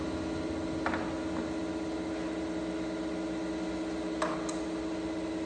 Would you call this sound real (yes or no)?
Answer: yes